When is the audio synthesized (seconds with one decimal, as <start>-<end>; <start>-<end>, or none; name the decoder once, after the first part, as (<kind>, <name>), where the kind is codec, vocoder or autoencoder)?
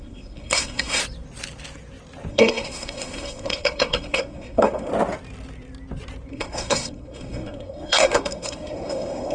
0.0-1.0 (codec, SNAC); 2.3-4.9; 6.3-9.3